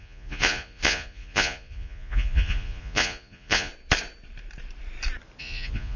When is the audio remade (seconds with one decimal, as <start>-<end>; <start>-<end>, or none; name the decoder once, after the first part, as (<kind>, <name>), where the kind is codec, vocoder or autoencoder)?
0.0-3.7 (vocoder, Vocos); 5.4-6.0